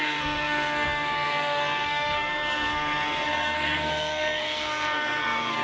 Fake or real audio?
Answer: fake